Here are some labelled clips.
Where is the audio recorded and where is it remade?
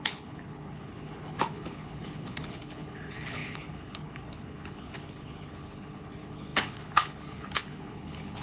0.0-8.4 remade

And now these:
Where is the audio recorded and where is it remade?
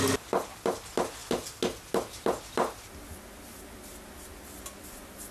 0.0-5.3 recorded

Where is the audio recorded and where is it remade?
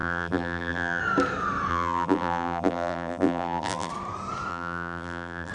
0.0-1.0 remade; 1.0-1.7 recorded; 1.7-3.9 remade; 3.9-4.5 recorded; 4.5-5.5 remade